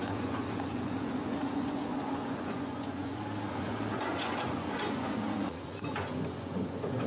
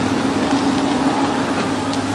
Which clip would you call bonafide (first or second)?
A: second